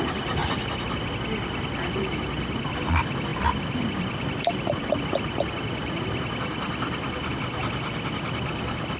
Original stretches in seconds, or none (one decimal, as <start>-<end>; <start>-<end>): 0.0-3.3; 7.3-9.0